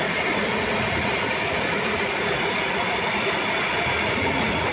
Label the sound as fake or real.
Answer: fake